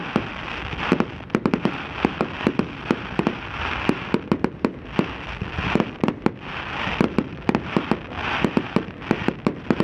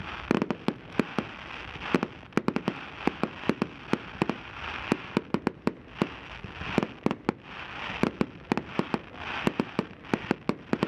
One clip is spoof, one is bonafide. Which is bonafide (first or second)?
second